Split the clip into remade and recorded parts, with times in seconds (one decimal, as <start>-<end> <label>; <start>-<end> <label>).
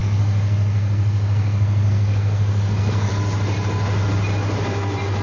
0.0-3.1 remade; 3.1-5.2 recorded